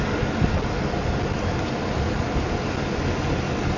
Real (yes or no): yes